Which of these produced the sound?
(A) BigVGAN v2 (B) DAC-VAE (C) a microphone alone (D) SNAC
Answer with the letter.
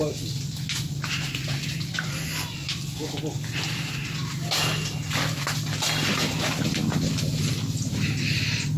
C